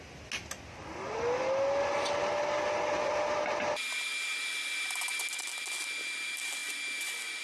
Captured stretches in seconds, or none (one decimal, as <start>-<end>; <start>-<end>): 0.0-7.4

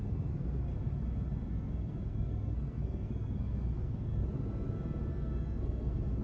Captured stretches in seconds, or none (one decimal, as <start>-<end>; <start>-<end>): 0.7-1.5; 4.1-5.1

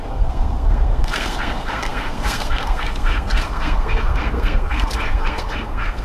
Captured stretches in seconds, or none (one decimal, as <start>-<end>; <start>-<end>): none

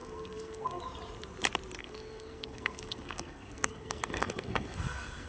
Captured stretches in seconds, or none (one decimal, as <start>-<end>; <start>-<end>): 0.8-1.8